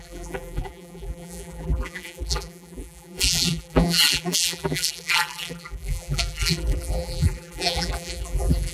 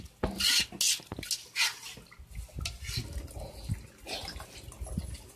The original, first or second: second